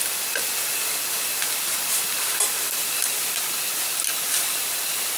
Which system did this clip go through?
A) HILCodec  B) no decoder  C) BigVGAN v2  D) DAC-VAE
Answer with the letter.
B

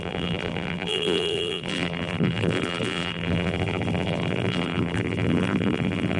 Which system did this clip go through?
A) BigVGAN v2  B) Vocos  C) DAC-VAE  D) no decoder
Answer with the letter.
A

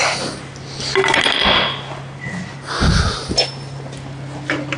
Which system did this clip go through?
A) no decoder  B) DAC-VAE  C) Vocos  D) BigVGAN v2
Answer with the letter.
A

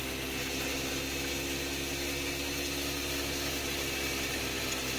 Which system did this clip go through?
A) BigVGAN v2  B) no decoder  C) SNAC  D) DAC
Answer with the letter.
B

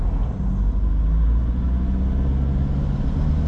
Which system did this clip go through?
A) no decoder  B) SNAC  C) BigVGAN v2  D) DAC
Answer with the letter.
A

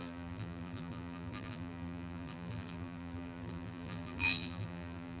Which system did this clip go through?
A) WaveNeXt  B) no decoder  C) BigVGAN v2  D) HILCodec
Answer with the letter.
C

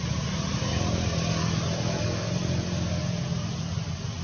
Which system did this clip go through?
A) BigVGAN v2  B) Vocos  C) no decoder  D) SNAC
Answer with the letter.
C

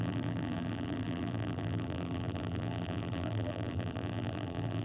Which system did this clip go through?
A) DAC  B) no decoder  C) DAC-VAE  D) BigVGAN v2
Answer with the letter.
D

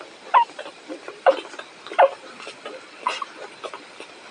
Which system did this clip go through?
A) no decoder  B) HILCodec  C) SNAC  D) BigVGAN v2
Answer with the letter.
D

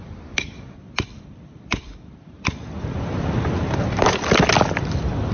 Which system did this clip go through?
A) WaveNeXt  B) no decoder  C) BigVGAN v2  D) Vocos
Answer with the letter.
C